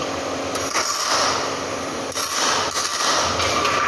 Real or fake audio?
real